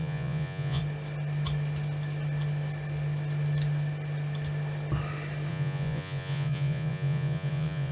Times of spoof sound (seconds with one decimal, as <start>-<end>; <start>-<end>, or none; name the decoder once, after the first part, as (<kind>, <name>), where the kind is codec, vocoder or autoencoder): 0.0-0.8 (vocoder, Vocos); 5.5-7.9